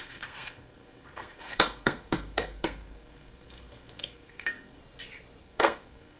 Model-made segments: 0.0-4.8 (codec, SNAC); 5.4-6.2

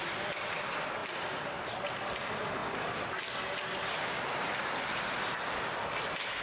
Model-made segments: none

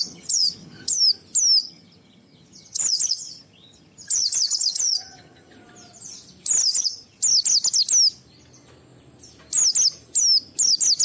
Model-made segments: 0.0-1.0 (vocoder, HiFi-GAN); 1.6-5.5; 6.6-7.2

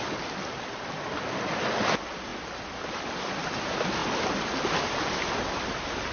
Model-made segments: none

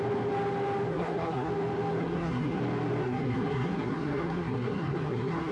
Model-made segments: 0.9-1.5 (codec, SNAC); 2.0-2.6; 3.0-5.5

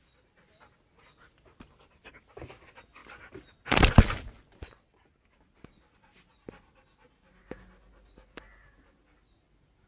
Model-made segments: none